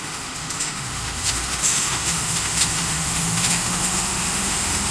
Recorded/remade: remade